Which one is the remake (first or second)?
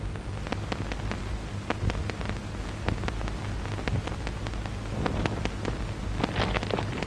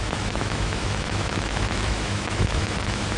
second